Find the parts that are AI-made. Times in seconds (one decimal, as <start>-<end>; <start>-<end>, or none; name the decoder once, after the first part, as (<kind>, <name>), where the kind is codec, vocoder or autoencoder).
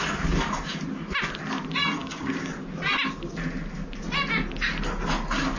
2.0-2.5 (codec, DAC)